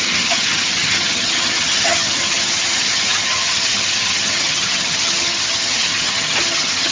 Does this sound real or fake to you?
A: fake